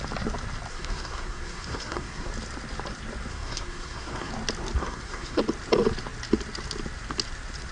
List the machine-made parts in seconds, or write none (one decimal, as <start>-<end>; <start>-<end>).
0.7-2.3; 3.3-4.3; 4.8-5.4